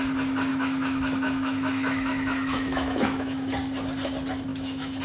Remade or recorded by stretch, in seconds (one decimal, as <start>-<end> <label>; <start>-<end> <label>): 0.0-0.5 recorded; 0.5-3.5 remade; 3.5-4.5 recorded; 4.5-5.0 remade

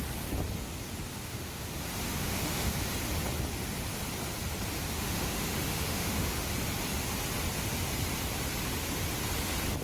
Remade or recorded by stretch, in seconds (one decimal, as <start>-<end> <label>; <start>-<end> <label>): 0.0-1.1 recorded; 1.1-1.7 remade; 1.7-2.2 recorded; 2.2-2.8 remade; 2.8-4.9 recorded; 4.9-6.5 remade; 6.5-9.8 recorded

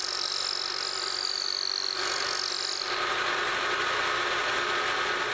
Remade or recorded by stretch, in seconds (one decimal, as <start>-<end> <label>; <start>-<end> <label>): 0.0-5.3 recorded

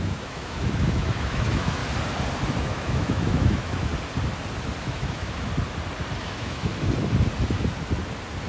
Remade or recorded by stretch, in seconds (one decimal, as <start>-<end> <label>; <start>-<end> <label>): 0.0-1.8 remade; 1.8-2.6 recorded; 2.6-3.9 remade; 3.9-4.8 recorded; 4.8-5.5 remade; 5.5-6.2 recorded; 6.2-6.7 remade; 6.7-8.5 recorded

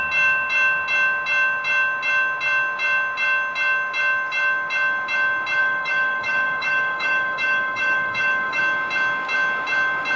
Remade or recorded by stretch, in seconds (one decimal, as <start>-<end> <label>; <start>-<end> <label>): 0.0-5.6 recorded; 5.6-8.6 remade; 8.6-10.2 recorded

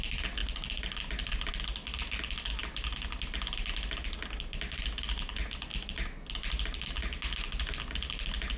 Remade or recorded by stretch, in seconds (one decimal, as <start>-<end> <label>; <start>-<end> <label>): 0.0-8.6 recorded

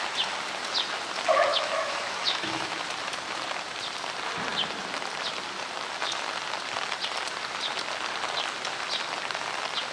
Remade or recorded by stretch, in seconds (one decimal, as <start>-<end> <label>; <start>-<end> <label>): 0.0-1.5 recorded; 1.5-2.8 remade; 2.8-9.9 recorded

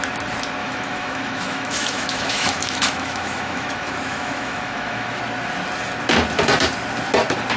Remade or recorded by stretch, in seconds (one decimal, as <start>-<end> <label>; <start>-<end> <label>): 0.0-0.6 recorded; 0.6-5.2 remade; 5.2-7.6 recorded